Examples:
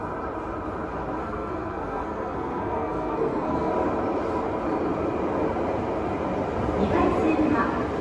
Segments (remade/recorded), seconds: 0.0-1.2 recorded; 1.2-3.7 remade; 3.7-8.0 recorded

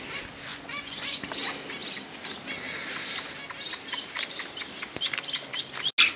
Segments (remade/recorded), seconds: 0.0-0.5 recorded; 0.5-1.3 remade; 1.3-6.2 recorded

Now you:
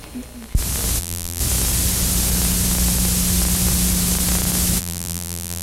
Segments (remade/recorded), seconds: 0.0-1.0 recorded; 1.0-1.4 remade; 1.4-4.8 recorded; 4.8-5.6 remade